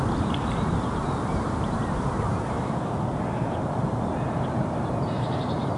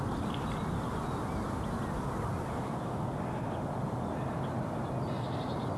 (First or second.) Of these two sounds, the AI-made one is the first